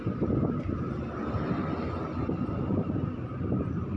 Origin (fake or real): fake